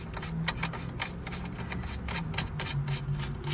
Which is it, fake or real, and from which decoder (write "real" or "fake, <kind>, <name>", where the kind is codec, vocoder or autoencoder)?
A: real